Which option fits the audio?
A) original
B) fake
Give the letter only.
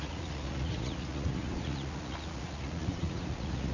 B